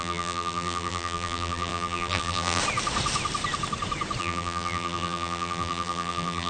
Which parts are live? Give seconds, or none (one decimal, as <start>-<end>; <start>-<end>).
2.6-4.2